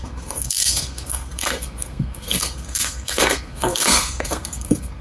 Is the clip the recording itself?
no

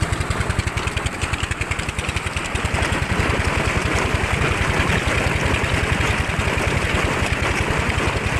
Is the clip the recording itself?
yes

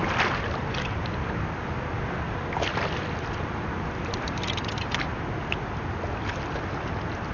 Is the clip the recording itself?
yes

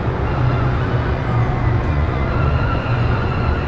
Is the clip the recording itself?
no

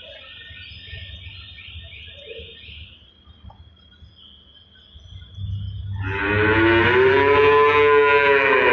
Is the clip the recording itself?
yes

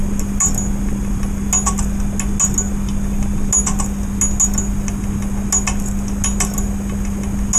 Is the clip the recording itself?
yes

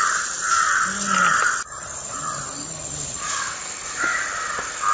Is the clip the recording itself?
yes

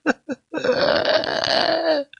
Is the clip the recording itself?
yes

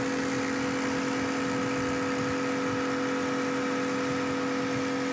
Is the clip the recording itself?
yes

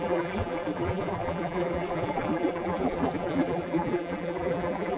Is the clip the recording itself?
no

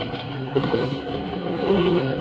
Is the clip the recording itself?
no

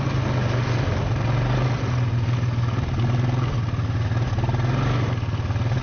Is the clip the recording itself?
yes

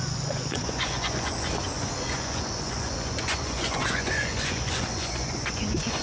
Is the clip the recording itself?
no